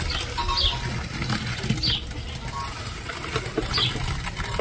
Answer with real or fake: real